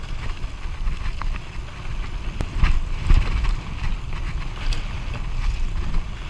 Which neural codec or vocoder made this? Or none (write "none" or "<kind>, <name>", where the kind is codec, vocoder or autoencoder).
none